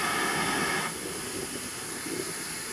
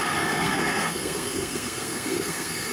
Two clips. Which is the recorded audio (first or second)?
first